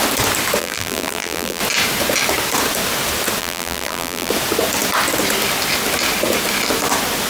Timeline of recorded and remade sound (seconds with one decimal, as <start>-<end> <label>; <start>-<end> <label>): 0.0-0.6 recorded; 0.6-1.6 remade; 1.6-3.4 recorded; 3.4-4.3 remade; 4.3-7.3 recorded